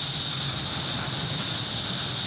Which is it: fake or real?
real